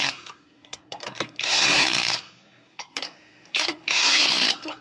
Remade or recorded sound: remade